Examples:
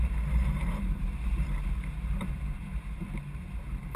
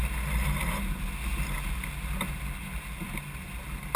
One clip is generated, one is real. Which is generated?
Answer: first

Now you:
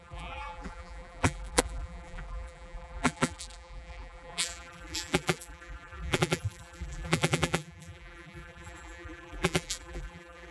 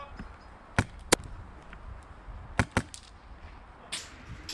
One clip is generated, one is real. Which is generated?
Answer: first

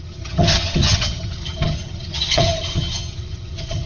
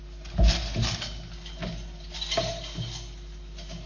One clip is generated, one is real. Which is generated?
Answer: first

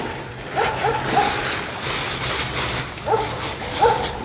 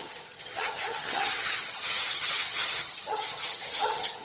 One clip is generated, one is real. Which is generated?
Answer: second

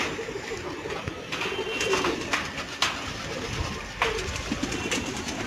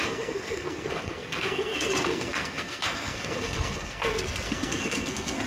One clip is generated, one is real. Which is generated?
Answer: second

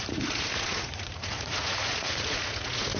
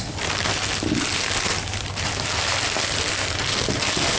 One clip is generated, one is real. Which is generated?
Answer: first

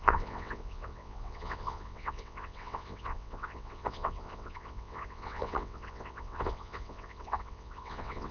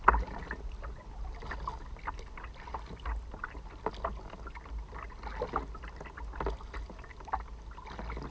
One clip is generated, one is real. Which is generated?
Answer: first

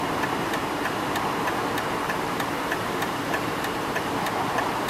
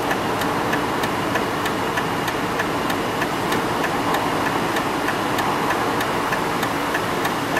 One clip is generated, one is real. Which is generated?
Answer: first